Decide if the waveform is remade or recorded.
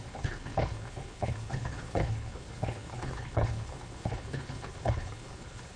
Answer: remade